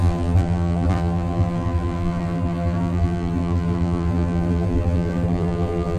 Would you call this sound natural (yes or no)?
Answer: no